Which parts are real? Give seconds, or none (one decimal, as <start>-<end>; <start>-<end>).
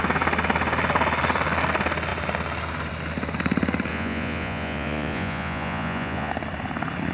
0.0-3.9; 6.3-7.1